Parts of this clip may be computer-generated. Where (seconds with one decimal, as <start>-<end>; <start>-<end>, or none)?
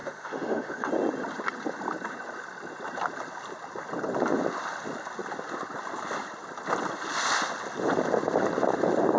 0.0-0.9